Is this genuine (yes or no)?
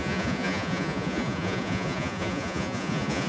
no